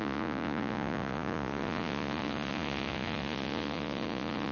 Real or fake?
fake